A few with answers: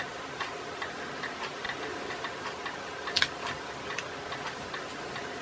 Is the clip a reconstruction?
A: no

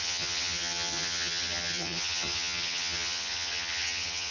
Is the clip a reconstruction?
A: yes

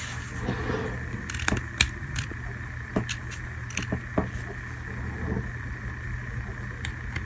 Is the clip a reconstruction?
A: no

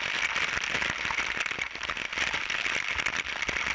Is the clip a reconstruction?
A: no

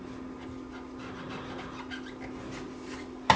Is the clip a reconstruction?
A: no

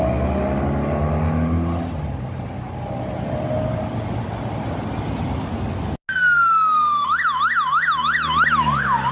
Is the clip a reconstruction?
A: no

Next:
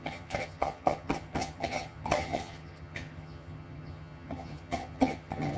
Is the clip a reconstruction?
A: yes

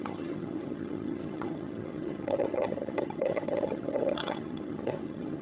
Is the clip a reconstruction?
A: yes